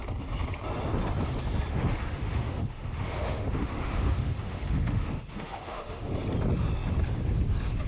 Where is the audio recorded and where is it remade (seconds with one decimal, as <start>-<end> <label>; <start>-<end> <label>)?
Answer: 0.0-1.7 recorded; 1.7-6.1 remade; 6.1-7.9 recorded